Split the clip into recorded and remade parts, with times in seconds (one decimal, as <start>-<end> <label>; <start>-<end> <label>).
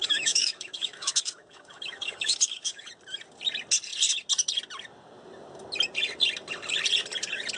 0.0-2.9 remade; 2.9-7.6 recorded